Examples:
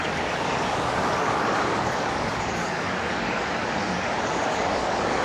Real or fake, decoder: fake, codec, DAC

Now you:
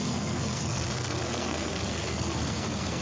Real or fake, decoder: fake, codec, SNAC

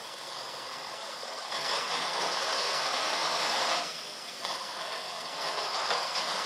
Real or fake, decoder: fake, codec, SNAC